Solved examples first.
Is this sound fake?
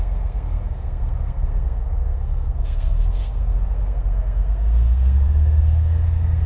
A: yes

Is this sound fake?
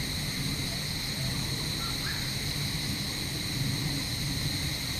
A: no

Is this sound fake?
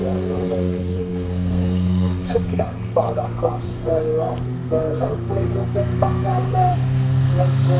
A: yes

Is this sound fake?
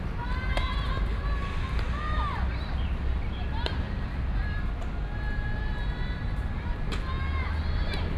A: no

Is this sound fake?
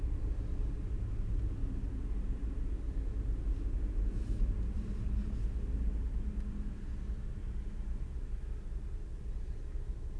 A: no